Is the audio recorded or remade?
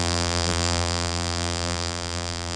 remade